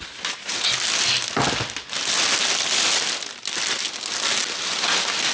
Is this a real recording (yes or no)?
yes